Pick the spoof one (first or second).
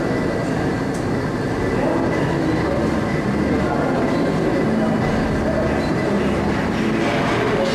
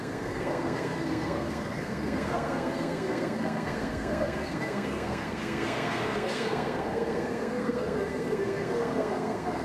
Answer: second